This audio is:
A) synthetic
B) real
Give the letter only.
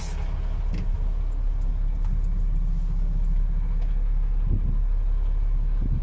B